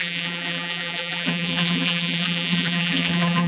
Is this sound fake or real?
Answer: fake